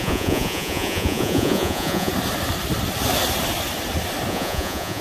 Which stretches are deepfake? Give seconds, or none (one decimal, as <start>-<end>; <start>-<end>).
0.0-2.1; 4.3-5.0